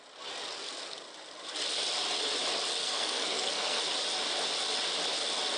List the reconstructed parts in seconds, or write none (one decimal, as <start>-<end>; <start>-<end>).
2.8-3.8